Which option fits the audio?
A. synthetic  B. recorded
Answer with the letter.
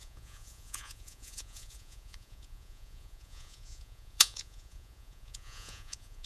A